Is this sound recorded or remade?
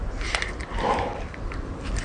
recorded